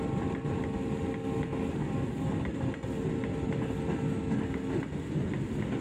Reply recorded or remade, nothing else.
recorded